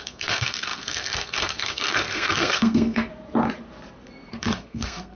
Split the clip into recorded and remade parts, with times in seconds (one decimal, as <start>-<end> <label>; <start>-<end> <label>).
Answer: 0.0-3.1 remade; 3.1-4.3 recorded; 4.3-5.1 remade